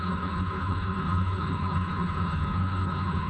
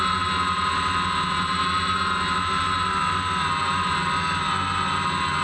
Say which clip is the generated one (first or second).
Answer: first